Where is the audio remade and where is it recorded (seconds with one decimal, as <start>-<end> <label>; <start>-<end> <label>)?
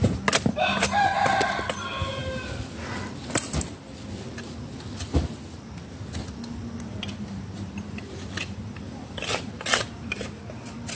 0.0-10.9 recorded